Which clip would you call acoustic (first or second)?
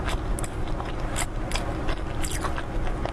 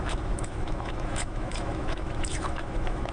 first